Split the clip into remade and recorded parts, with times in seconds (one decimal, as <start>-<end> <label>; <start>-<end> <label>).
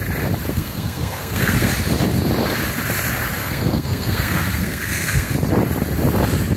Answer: 0.0-0.5 recorded; 0.5-1.7 remade; 1.7-3.4 recorded; 3.4-5.3 remade; 5.3-6.6 recorded